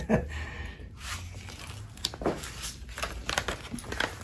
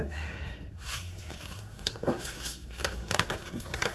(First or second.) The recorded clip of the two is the first